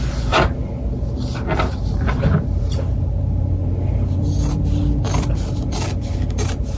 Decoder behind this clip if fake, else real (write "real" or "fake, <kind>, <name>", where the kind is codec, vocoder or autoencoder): real